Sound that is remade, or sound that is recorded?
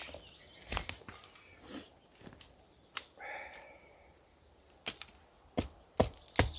recorded